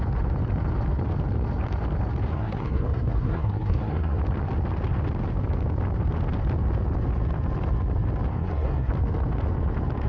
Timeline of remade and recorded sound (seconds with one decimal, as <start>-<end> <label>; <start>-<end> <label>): 0.0-2.3 recorded; 2.3-4.2 remade; 4.2-8.3 recorded; 8.3-8.9 remade; 8.9-10.1 recorded